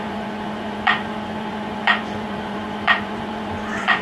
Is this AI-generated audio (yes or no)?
yes